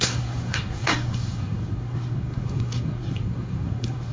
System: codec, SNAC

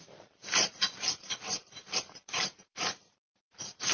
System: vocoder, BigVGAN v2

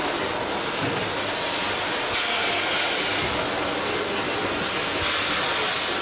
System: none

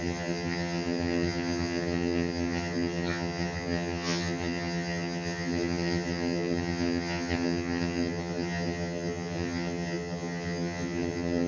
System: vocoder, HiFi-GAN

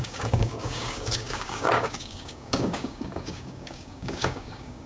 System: codec, DAC